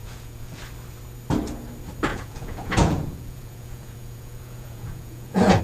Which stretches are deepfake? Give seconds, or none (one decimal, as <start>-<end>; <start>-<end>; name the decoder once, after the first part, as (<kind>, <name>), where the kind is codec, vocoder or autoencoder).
0.0-0.6 (vocoder, Vocos); 2.1-5.6